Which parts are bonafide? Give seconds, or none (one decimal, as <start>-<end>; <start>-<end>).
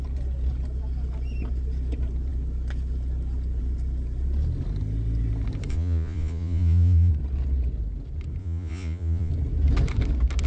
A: 0.0-5.7; 7.1-8.4; 9.3-10.5